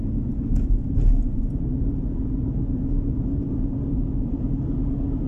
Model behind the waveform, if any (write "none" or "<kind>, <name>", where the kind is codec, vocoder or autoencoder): none